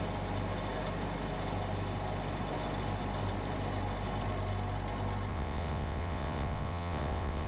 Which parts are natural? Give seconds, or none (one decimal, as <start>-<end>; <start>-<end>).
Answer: 0.0-5.3